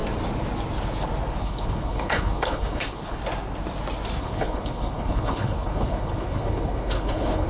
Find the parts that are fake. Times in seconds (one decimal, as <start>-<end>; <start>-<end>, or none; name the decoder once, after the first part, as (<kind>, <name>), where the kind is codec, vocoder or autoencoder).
1.4-3.2 (codec, HILCodec); 4.2-7.5